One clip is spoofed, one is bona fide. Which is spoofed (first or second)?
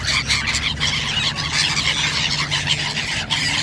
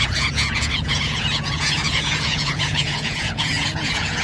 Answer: second